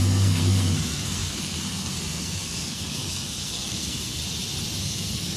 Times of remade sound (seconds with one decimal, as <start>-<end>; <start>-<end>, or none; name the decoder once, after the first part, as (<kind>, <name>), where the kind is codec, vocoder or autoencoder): 0.0-4.2 (codec, SNAC); 4.8-5.4